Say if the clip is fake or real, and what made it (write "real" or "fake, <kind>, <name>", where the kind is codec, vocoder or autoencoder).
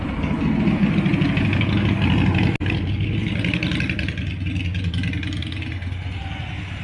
real